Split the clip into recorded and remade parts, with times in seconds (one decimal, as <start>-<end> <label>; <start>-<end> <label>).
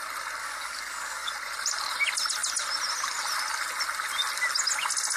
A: 0.0-0.4 recorded; 0.4-1.3 remade; 1.3-5.2 recorded